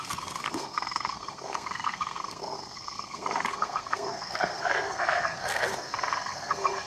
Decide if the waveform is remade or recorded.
remade